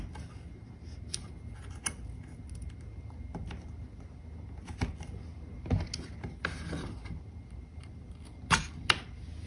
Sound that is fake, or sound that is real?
real